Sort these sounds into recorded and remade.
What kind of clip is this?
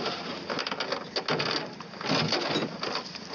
recorded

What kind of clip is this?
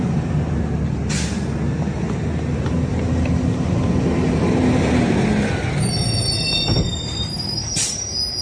recorded